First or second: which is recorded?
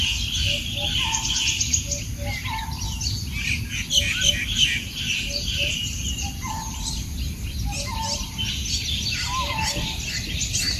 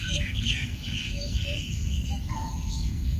first